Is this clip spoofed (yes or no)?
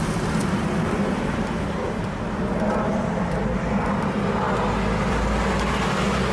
no